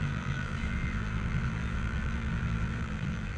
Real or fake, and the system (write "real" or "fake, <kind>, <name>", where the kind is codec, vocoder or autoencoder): fake, vocoder, BigVGAN v2